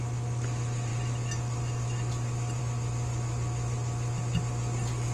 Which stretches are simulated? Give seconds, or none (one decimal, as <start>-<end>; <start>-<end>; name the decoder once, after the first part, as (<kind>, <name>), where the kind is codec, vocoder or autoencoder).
none